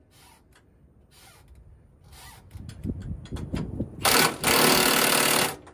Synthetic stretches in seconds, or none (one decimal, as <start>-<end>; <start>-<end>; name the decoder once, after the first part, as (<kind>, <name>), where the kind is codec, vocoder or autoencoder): none